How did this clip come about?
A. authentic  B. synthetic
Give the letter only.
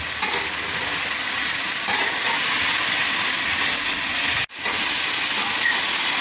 A